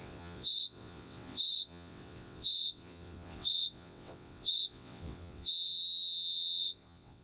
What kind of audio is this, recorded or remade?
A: remade